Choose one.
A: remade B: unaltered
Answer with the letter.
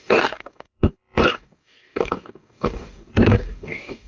A